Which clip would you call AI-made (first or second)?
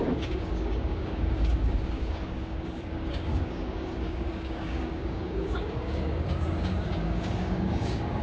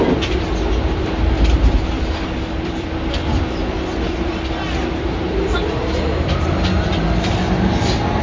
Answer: first